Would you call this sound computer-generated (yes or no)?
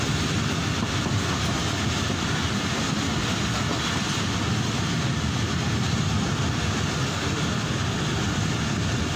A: no